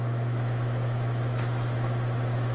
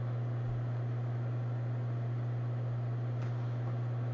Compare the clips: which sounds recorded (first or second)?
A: second